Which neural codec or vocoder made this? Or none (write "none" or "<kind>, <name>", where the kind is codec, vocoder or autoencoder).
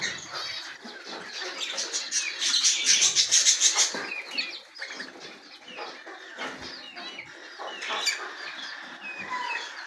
none